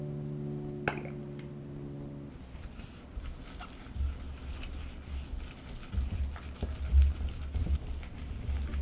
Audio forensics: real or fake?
real